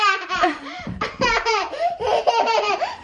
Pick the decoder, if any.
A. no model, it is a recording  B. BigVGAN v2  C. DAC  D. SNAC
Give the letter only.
B